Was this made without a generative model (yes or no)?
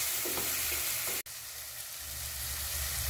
yes